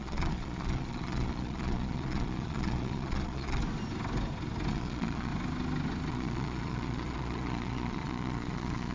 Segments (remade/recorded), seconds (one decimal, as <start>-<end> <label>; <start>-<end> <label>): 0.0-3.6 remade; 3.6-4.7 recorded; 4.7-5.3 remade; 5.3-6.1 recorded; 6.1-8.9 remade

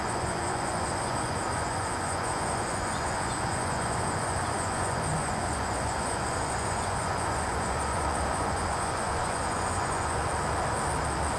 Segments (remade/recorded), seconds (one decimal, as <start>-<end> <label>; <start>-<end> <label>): 0.0-10.2 remade; 10.2-11.4 recorded

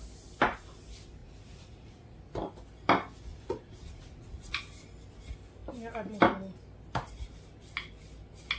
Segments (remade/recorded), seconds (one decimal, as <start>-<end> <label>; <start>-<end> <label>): 0.0-1.2 recorded; 1.2-2.2 remade; 2.2-3.3 recorded; 3.3-4.6 remade; 4.6-8.6 recorded